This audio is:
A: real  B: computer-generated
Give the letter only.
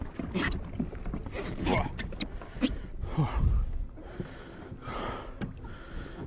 A